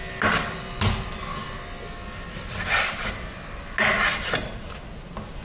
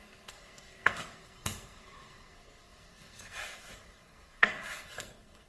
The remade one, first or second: second